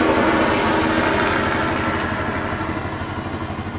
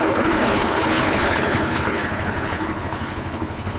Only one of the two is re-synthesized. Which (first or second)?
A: second